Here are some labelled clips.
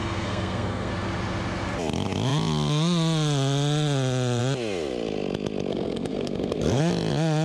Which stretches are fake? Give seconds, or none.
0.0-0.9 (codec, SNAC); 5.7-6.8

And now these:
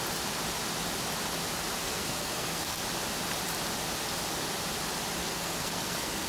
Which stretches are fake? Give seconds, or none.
1.8-2.8 (codec, SNAC); 5.2-6.3

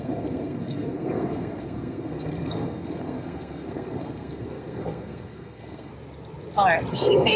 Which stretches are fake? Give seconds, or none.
0.0-5.9 (codec, SNAC); 6.9-7.4

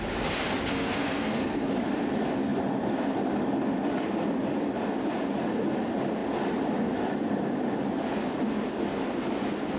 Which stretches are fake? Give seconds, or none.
0.7-1.7 (codec, SNAC)

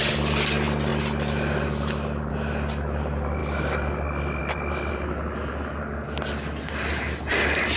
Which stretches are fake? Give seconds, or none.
none

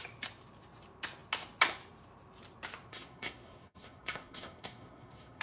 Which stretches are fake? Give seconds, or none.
2.9-5.4 (codec, SNAC)